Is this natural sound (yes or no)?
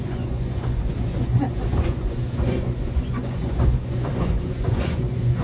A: no